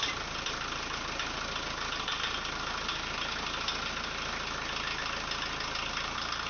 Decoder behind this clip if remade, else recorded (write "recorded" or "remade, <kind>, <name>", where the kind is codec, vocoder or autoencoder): recorded